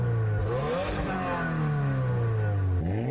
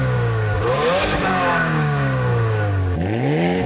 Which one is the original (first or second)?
first